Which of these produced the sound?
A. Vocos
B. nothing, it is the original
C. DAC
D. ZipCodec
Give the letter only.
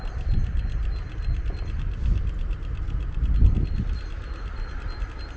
B